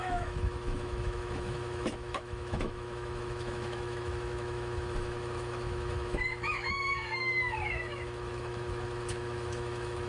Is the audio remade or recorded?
remade